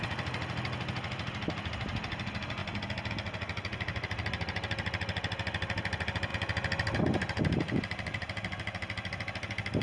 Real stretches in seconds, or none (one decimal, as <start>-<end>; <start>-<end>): 0.0-9.8